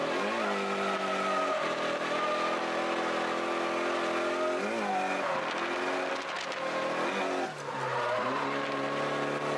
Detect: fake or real real